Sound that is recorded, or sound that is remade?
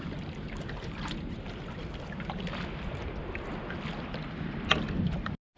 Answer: recorded